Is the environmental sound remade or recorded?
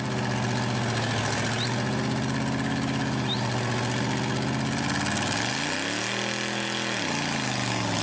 recorded